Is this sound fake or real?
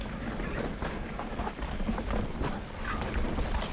real